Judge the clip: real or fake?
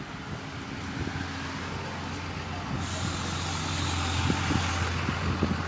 real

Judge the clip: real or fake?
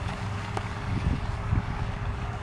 fake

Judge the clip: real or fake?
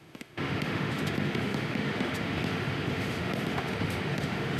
fake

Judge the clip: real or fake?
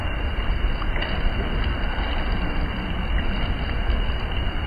fake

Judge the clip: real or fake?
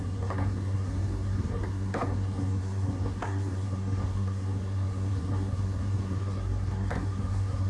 fake